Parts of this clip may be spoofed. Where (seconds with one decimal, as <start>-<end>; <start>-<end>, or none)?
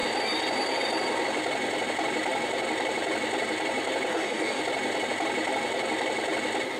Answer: 4.1-4.6